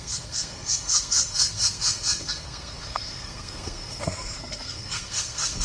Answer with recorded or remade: remade